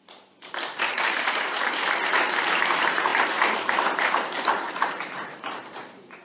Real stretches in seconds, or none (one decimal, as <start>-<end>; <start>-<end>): none